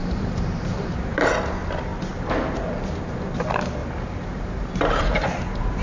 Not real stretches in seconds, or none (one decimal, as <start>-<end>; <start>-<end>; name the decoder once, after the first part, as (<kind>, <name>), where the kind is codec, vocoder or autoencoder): 0.0-1.2 (vocoder, BigVGAN v2); 3.8-5.0